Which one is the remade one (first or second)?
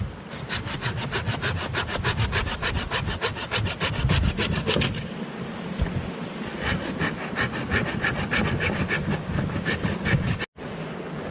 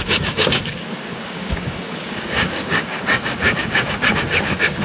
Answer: second